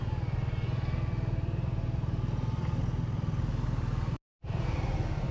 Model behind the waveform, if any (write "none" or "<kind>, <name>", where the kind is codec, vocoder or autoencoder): none